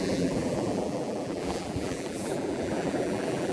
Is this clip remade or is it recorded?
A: remade